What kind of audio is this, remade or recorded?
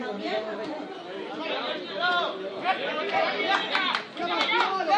recorded